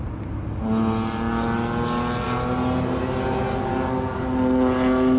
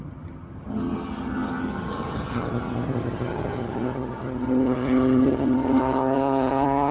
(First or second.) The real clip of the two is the first